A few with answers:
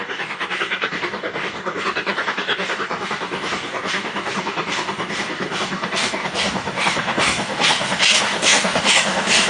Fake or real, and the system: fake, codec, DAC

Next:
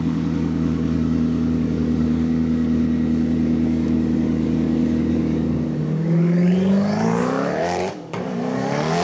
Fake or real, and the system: fake, codec, DAC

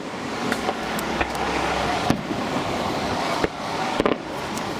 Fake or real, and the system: fake, codec, DAC